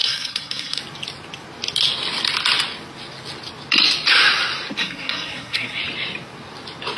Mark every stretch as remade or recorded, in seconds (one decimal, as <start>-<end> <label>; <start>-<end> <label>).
0.0-0.8 remade; 0.8-4.8 recorded; 4.8-5.8 remade; 5.8-7.0 recorded